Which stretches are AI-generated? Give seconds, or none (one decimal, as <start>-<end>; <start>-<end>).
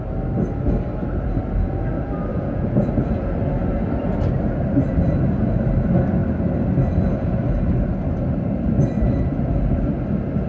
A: 2.3-2.9